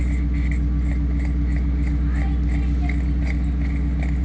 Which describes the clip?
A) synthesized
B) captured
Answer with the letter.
B